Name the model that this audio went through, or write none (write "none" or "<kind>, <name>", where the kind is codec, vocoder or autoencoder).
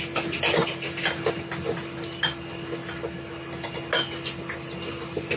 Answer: none